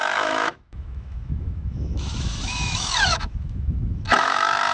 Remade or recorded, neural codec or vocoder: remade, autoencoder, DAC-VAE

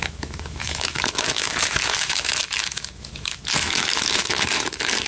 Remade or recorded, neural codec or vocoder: remade, autoencoder, DAC-VAE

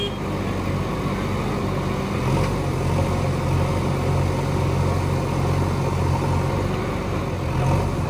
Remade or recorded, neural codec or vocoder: recorded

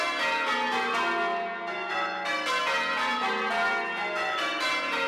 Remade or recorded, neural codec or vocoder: recorded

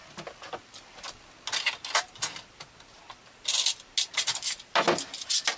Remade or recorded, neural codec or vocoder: recorded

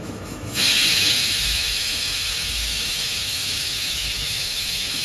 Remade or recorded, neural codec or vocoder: remade, autoencoder, DAC-VAE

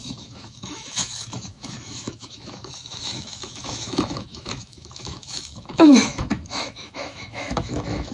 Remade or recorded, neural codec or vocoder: remade, autoencoder, DAC-VAE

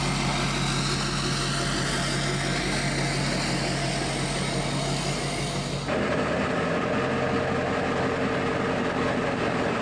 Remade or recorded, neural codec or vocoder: recorded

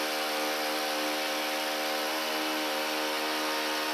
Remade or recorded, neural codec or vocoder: recorded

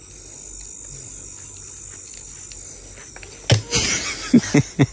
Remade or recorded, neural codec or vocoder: recorded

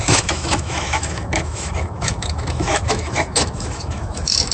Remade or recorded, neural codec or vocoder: remade, autoencoder, DAC-VAE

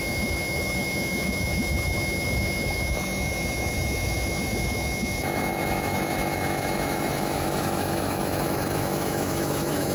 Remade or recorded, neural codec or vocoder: remade, autoencoder, DAC-VAE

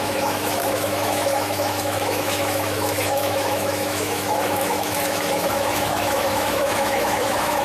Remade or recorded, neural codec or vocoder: remade, autoencoder, DAC-VAE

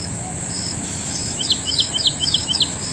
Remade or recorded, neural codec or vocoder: remade, autoencoder, DAC-VAE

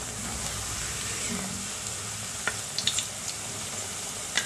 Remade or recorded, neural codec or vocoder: recorded